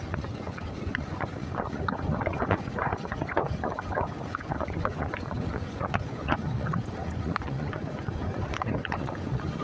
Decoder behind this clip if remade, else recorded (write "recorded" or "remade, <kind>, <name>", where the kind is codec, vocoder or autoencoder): remade, vocoder, Vocos